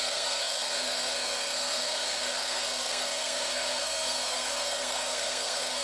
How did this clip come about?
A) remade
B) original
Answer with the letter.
A